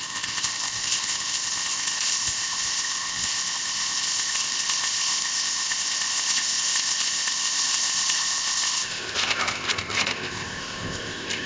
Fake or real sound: fake